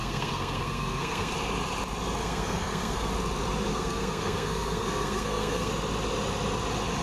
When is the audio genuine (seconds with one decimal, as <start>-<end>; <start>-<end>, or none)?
1.3-2.2; 3.1-3.7; 5.7-7.0